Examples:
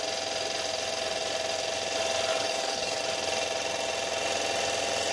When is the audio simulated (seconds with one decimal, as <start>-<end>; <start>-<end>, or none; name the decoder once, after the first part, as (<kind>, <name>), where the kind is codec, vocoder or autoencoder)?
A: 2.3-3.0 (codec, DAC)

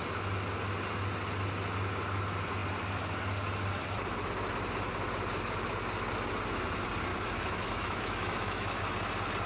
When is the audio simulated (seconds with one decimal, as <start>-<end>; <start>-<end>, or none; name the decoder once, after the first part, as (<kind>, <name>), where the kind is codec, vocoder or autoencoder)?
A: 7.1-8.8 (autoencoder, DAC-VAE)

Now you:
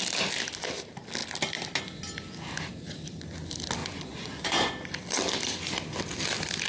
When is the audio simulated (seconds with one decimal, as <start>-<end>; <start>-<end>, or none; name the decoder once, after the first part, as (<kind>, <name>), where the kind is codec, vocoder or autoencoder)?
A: 3.8-4.7 (vocoder, Vocos)

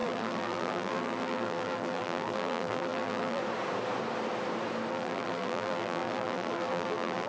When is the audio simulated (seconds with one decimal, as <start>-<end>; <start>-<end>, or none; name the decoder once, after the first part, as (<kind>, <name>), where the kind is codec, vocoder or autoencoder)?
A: 0.0-3.4 (vocoder, BigVGAN v2); 4.9-7.3

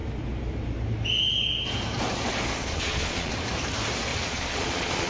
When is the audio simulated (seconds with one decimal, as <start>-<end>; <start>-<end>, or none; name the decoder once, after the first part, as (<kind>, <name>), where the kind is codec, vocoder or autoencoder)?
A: 2.6-3.3 (vocoder, Vocos); 4.1-5.1

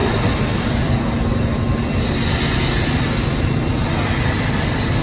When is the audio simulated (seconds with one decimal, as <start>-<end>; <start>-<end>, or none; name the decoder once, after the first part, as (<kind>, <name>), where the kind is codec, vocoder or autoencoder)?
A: 0.0-1.0 (vocoder, BigVGAN v2)